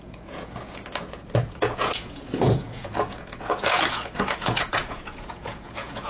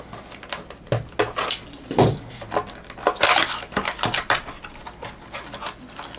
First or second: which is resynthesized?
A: first